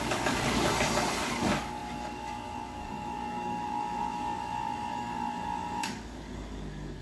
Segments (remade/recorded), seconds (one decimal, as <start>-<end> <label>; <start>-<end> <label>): 0.0-0.7 remade; 0.7-1.3 recorded; 1.3-7.0 remade